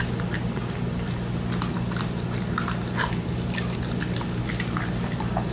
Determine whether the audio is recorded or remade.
recorded